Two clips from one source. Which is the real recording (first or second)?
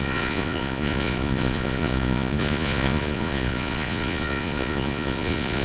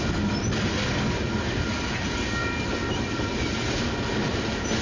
second